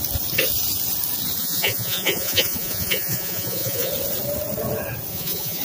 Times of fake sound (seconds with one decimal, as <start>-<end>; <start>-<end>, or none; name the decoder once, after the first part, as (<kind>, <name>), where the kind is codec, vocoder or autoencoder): 1.4-3.9 (vocoder, Vocos); 5.1-5.6